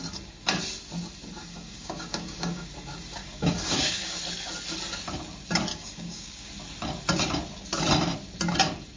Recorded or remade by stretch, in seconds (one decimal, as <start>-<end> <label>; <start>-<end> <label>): 0.0-1.4 recorded; 1.4-2.7 remade; 2.7-3.2 recorded; 3.2-4.2 remade; 4.2-5.7 recorded; 5.7-6.5 remade; 6.5-9.0 recorded